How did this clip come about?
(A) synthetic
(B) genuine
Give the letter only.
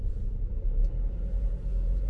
B